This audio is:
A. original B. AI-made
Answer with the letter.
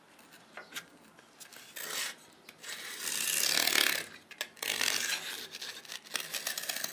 A